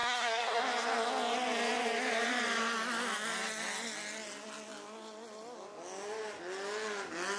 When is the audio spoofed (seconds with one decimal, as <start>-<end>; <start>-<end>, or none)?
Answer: 0.0-0.6

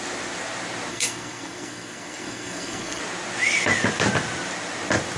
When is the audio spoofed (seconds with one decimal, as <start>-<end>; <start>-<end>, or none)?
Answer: 0.9-3.0

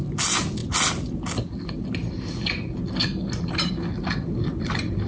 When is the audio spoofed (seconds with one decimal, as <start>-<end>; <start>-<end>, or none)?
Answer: none

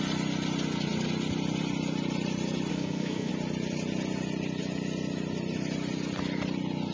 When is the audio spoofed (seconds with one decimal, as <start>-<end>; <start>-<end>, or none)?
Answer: 2.7-3.3